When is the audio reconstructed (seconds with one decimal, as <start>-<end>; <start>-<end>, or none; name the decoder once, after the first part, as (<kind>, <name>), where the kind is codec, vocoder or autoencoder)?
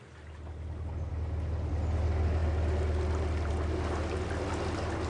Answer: none